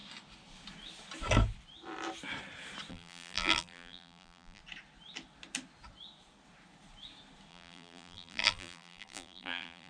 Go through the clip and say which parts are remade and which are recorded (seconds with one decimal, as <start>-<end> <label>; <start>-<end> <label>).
0.0-2.9 recorded; 2.9-4.6 remade; 4.6-7.5 recorded; 7.5-9.9 remade